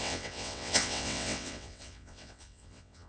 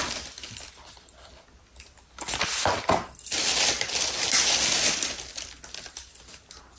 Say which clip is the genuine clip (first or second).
second